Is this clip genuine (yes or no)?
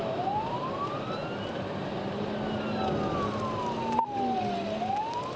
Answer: no